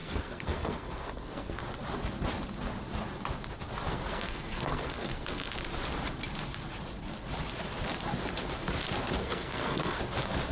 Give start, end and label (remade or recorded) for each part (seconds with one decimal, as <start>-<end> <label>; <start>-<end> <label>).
0.0-1.6 remade; 1.6-3.9 recorded; 3.9-5.5 remade; 5.5-9.2 recorded; 9.2-10.0 remade; 10.0-10.5 recorded